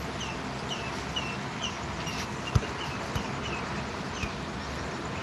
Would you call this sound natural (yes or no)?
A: yes